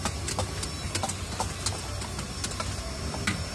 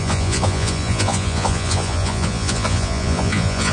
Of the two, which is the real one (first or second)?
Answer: first